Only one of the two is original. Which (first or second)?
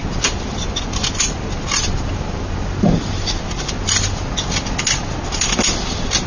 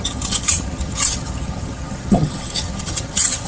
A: first